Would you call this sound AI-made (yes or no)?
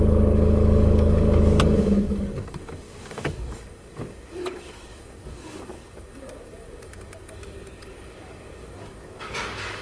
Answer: yes